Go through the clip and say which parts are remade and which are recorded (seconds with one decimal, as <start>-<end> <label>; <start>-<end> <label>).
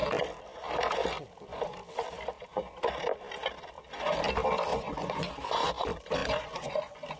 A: 0.0-4.7 recorded; 4.7-5.3 remade; 5.3-6.2 recorded; 6.2-7.2 remade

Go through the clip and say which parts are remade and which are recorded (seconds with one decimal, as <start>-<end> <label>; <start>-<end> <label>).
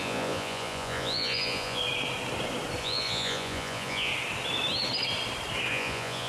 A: 0.0-1.8 remade; 1.8-2.8 recorded; 2.8-4.1 remade; 4.1-5.7 recorded; 5.7-6.3 remade